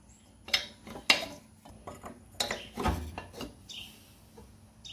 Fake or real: real